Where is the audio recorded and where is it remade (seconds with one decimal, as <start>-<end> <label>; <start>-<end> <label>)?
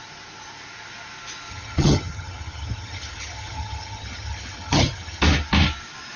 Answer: 0.0-1.5 recorded; 1.5-5.2 remade; 5.2-6.2 recorded